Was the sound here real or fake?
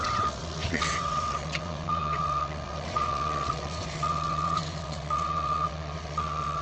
fake